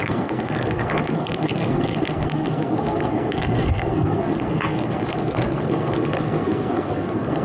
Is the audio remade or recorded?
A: remade